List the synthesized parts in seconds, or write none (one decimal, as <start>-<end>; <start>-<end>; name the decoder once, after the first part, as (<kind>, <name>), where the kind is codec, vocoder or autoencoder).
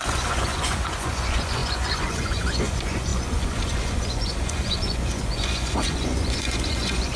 0.0-7.2 (vocoder, Vocos)